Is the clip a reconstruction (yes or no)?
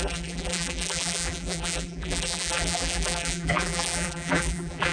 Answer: yes